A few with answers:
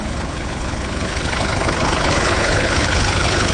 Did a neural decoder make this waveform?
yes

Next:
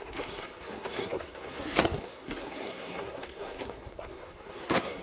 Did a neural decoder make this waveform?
yes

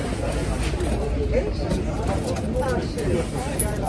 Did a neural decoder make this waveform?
no